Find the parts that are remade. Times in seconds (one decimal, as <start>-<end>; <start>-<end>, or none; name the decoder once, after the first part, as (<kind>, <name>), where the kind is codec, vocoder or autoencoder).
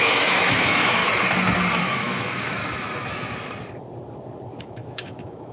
0.0-1.0 (autoencoder, DAC-VAE); 1.8-2.6; 4.6-5.5